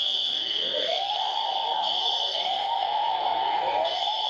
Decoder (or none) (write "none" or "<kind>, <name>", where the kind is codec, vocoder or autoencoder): codec, SNAC